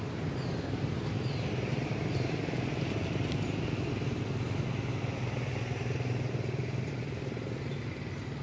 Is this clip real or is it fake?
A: real